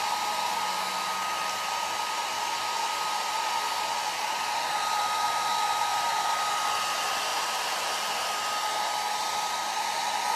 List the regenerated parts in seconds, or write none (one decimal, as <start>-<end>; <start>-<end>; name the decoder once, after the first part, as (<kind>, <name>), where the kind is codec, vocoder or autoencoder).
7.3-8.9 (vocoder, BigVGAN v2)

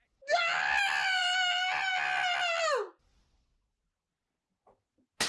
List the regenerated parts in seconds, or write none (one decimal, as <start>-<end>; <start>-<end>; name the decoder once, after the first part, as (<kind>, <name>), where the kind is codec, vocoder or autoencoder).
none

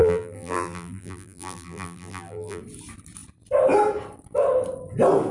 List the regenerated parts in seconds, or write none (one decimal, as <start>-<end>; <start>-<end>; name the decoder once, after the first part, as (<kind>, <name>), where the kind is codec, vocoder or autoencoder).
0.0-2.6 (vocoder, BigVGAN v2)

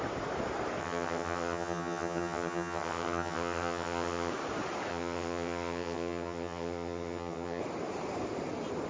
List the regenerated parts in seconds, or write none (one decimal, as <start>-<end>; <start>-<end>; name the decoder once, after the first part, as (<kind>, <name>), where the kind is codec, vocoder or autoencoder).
0.8-4.3 (vocoder, HiFi-GAN); 4.9-7.6